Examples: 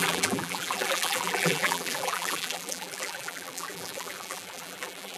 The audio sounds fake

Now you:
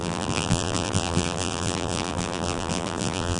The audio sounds fake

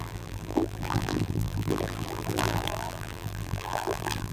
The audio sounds fake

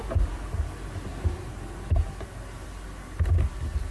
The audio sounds real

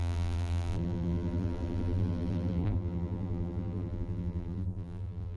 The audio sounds fake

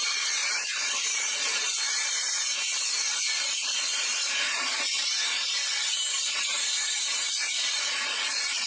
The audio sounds fake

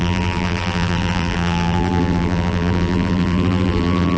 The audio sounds fake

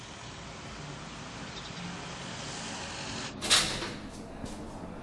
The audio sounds real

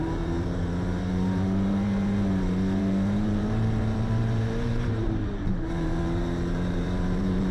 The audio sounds fake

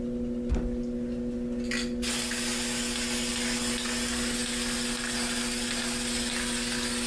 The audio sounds real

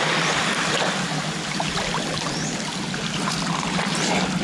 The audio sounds real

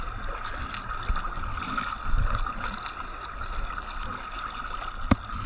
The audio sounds real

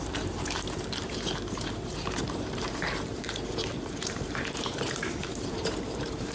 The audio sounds fake